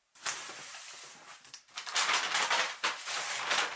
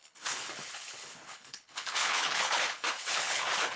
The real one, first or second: first